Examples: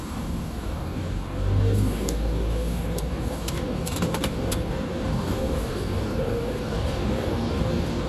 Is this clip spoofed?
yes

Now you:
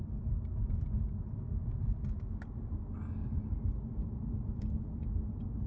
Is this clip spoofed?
no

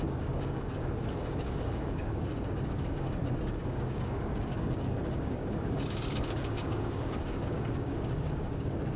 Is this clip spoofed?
yes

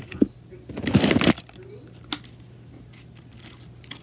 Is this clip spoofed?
no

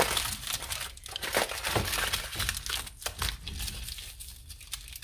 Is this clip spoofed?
no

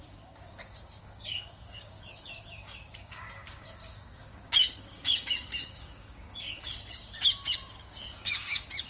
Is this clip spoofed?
yes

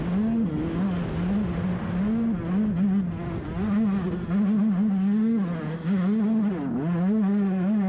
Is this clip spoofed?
no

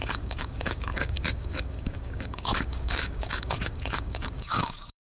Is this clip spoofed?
yes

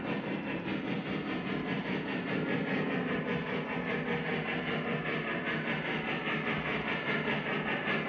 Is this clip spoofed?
no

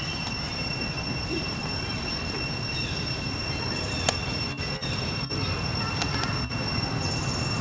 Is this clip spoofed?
no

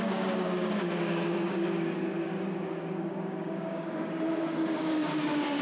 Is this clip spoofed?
yes